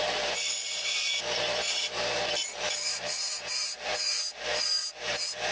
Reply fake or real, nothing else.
fake